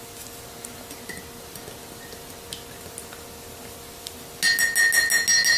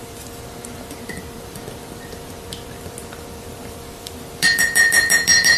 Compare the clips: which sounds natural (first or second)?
first